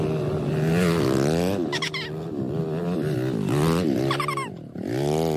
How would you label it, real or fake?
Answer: real